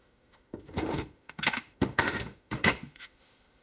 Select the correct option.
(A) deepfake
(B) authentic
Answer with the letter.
A